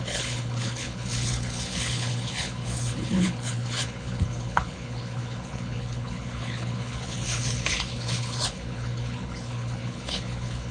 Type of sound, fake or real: fake